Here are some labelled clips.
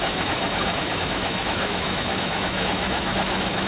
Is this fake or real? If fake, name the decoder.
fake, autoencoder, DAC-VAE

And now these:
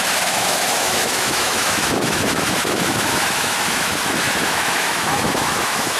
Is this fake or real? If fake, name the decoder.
fake, autoencoder, DAC-VAE